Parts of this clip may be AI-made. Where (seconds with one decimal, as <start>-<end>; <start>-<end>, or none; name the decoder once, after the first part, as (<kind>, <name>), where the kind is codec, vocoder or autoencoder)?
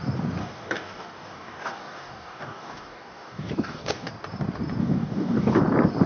0.4-4.1 (codec, DAC); 4.8-5.6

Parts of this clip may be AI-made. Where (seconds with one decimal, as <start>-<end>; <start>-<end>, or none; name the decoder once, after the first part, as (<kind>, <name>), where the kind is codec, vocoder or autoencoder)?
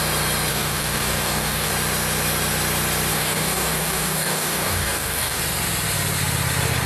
0.5-1.7 (codec, DAC); 3.1-5.4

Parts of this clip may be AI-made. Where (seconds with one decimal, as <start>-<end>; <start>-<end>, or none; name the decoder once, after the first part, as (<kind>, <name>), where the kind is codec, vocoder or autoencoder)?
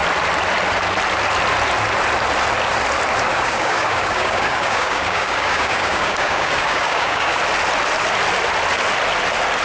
3.3-7.4 (codec, DAC)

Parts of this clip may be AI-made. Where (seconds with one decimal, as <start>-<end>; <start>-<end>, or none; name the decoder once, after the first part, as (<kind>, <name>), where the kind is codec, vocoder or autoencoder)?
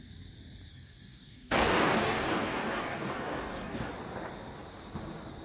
0.7-3.9 (codec, DAC)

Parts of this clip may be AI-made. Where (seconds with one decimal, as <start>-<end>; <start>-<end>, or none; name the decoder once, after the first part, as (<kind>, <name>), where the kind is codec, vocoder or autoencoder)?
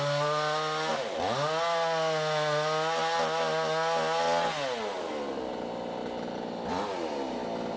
none